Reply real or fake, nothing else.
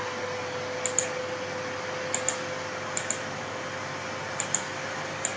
real